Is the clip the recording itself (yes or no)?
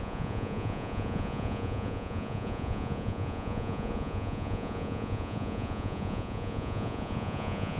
no